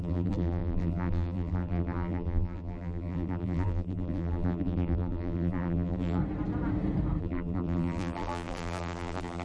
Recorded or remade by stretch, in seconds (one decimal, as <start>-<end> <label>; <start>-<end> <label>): 0.0-6.2 remade; 6.2-7.2 recorded; 7.2-9.4 remade